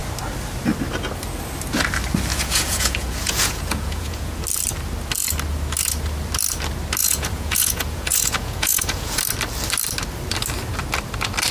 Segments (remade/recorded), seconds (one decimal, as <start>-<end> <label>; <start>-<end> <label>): 0.0-2.3 recorded; 2.3-4.4 remade; 4.4-7.0 recorded; 7.0-9.2 remade; 9.2-11.5 recorded